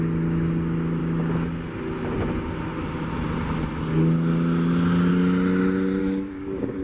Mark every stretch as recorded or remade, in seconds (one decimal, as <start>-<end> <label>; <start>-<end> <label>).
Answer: 0.0-6.0 recorded; 6.0-6.8 remade